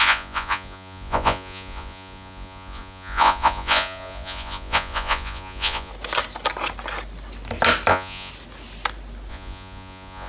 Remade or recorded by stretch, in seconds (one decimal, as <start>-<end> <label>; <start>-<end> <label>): 0.0-5.9 remade; 5.9-7.9 recorded; 7.9-8.3 remade; 8.3-9.3 recorded; 9.3-10.3 remade